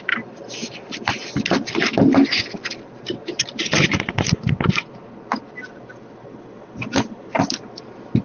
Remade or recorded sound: recorded